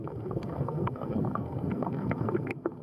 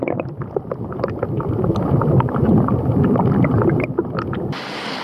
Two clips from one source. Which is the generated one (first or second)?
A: first